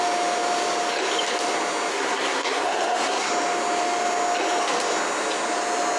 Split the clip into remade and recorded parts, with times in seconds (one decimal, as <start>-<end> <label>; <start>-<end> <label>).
0.0-1.9 recorded; 1.9-3.3 remade; 3.3-6.0 recorded